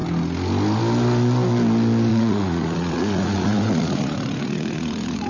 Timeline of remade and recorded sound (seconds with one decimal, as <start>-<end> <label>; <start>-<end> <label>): 0.0-2.1 recorded; 2.1-5.3 remade